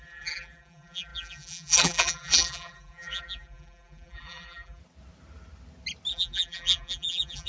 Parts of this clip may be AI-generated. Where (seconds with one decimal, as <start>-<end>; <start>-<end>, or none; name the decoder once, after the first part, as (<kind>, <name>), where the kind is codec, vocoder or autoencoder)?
0.0-4.8 (vocoder, BigVGAN v2); 6.1-7.5

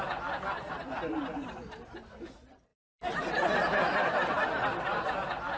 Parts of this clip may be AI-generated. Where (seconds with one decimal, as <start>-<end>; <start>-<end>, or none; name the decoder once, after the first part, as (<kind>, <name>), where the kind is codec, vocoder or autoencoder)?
none